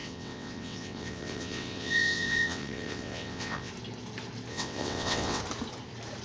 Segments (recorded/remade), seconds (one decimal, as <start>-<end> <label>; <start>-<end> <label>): 0.0-3.7 remade; 3.7-4.5 recorded; 4.5-5.4 remade; 5.4-6.2 recorded